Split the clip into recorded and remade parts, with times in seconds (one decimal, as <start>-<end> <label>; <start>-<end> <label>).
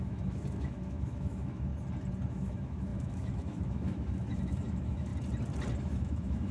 0.0-1.7 remade; 1.7-2.3 recorded; 2.3-5.1 remade; 5.1-5.8 recorded; 5.8-6.5 remade